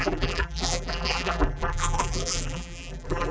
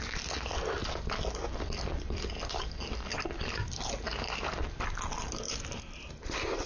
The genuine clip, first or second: second